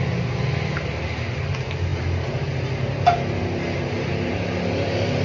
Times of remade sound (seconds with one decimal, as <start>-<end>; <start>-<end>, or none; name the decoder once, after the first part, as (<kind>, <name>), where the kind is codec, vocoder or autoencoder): none

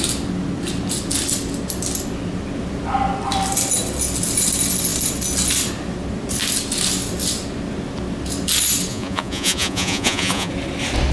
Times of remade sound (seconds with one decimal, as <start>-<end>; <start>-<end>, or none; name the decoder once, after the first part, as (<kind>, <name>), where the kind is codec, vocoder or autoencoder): 8.9-10.5 (vocoder, Vocos)

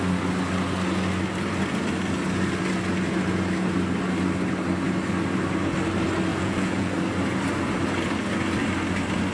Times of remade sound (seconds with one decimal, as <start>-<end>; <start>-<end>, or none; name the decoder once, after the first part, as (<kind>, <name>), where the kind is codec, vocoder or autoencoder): 6.3-6.9 (vocoder, Vocos)

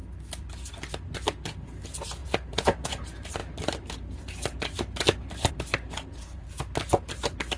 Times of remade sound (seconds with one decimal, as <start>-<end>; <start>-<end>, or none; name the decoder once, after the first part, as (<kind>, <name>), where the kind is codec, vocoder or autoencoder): 2.2-3.0 (vocoder, Vocos)